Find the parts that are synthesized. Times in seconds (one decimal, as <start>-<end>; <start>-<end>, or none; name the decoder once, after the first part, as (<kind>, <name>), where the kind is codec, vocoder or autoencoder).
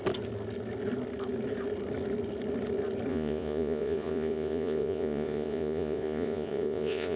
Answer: 3.1-7.2 (vocoder, Vocos)